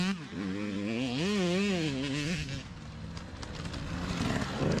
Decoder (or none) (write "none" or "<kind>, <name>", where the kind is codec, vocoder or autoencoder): none